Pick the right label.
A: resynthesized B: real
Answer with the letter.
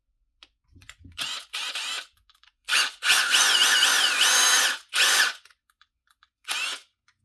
A